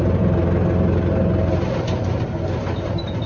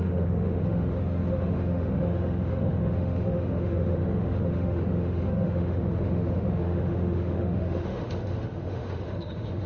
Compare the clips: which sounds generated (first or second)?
second